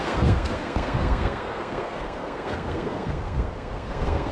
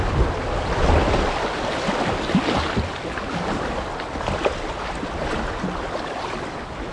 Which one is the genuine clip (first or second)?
second